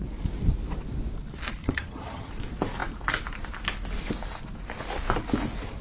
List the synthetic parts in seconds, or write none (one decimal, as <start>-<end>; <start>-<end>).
1.6-2.3